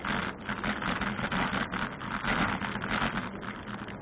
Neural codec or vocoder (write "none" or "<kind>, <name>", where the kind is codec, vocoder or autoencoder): none